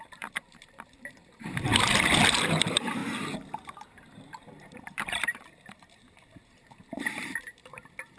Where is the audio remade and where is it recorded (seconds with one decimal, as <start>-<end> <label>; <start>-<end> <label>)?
0.0-1.7 remade; 1.7-2.5 recorded; 2.5-8.2 remade